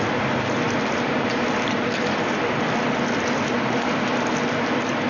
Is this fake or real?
real